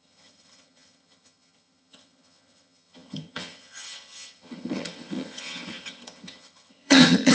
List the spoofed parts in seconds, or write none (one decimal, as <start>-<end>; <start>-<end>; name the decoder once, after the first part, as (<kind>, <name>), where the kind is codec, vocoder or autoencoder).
0.0-7.3 (vocoder, HiFi-GAN)